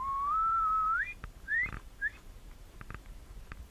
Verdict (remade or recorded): remade